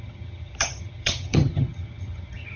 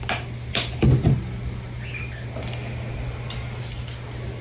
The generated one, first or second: first